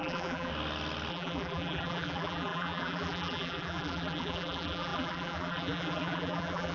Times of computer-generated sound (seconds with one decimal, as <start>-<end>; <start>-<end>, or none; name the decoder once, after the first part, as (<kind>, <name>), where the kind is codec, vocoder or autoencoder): 0.0-0.5 (vocoder, BigVGAN v2); 1.1-6.7